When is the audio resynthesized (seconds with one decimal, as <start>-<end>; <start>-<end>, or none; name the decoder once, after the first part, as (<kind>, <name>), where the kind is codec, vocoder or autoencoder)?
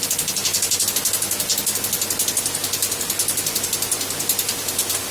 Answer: none